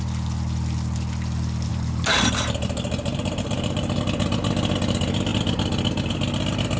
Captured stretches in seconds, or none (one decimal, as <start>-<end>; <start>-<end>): 0.0-1.7; 4.0-6.8